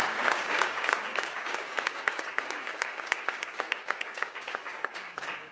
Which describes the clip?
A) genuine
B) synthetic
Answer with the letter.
B